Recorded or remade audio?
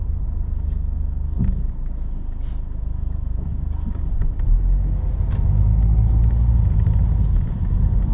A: recorded